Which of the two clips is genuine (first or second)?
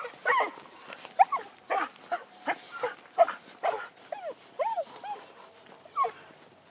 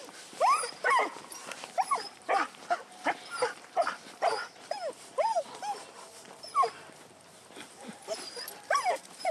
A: first